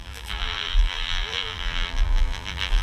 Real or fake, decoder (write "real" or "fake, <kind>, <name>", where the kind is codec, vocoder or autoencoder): fake, vocoder, BigVGAN v2